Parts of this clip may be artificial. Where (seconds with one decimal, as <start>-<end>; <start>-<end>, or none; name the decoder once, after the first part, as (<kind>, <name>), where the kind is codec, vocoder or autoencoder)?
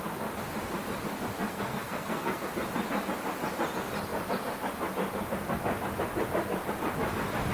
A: 1.5-2.5 (codec, SNAC)